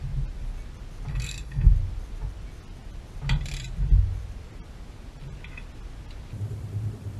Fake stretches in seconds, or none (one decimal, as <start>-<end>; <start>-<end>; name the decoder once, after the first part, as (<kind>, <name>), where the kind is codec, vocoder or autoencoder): 1.1-1.7 (codec, SNAC)